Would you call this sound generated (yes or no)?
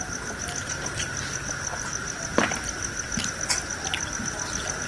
no